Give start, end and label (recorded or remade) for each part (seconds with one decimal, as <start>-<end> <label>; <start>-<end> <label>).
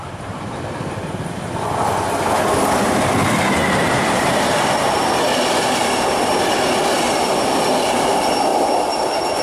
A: 0.0-9.4 recorded